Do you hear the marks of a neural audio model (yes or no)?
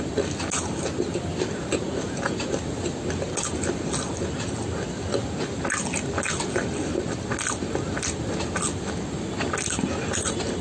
no